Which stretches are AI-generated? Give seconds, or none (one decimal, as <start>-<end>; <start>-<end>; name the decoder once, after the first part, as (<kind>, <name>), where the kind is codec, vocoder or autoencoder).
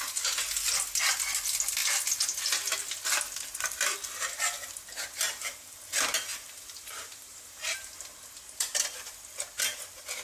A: 6.3-7.9 (vocoder, BigVGAN v2)